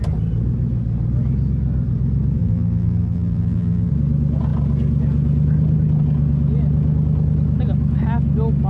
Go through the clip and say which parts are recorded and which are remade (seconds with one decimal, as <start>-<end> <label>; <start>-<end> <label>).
0.0-2.4 recorded; 2.4-3.9 remade; 3.9-8.7 recorded